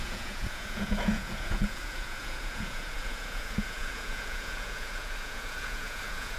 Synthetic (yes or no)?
yes